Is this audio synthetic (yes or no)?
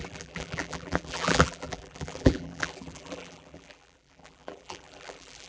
yes